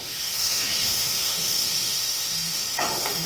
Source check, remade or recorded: remade